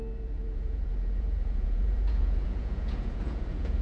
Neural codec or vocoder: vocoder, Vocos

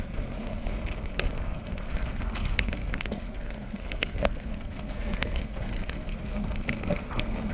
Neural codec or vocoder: codec, SNAC